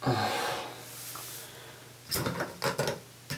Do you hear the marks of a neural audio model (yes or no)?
no